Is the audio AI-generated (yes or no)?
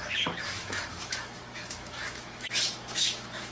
yes